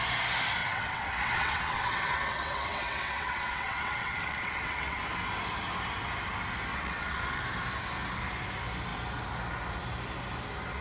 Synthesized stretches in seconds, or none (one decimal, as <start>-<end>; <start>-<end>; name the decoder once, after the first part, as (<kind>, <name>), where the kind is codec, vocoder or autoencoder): 0.6-5.0 (vocoder, WaveNeXt); 6.7-7.4